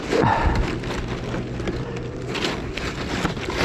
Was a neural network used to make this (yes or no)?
no